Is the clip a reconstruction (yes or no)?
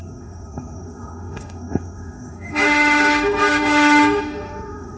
yes